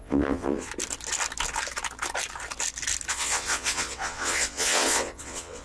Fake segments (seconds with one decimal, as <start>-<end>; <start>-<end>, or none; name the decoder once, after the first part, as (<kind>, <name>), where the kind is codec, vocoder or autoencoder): 0.0-0.7 (vocoder, WaveNeXt); 3.1-5.6